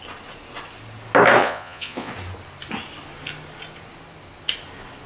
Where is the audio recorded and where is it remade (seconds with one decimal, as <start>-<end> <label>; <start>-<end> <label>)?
0.0-1.4 recorded; 1.4-2.1 remade; 2.1-5.1 recorded